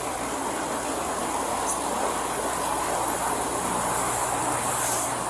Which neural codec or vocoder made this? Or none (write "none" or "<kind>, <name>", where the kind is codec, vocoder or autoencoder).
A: none